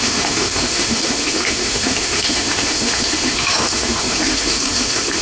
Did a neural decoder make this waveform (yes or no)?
yes